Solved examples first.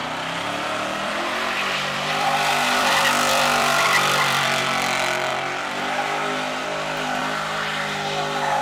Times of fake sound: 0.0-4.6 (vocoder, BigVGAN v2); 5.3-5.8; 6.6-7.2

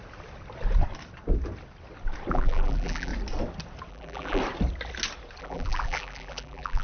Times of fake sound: 2.3-3.1 (vocoder, BigVGAN v2); 3.9-4.4; 5.4-6.8